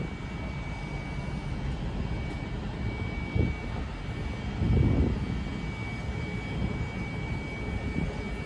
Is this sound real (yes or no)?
yes